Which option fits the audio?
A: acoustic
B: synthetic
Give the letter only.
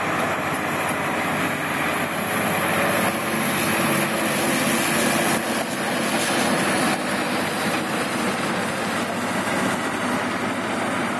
A